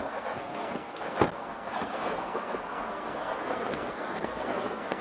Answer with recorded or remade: remade